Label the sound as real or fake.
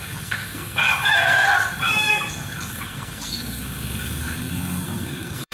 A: fake